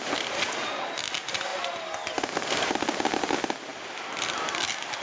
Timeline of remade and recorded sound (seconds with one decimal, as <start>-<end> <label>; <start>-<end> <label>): 0.0-5.0 recorded